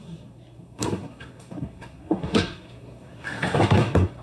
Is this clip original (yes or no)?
no